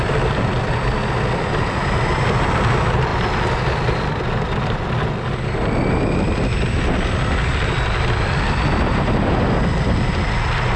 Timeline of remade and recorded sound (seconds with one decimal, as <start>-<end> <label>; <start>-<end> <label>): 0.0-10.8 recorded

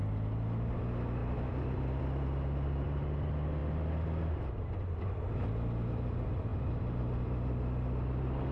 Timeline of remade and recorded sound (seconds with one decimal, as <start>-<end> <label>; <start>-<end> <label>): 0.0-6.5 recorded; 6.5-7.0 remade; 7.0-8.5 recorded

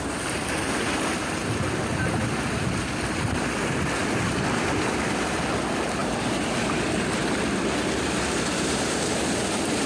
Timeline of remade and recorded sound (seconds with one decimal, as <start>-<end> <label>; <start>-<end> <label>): 0.0-6.0 recorded; 6.0-6.7 remade; 6.7-9.9 recorded